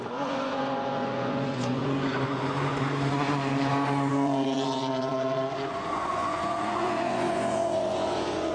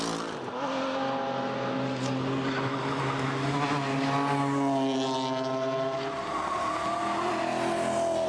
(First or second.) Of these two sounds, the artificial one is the first